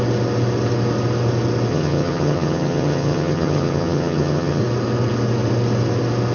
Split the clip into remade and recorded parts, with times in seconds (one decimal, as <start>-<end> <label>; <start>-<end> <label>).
0.0-1.7 recorded; 1.7-4.6 remade; 4.6-6.3 recorded